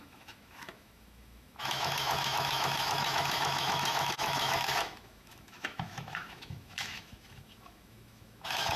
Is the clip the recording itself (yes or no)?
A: no